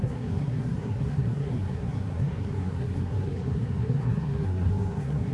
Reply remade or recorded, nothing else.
remade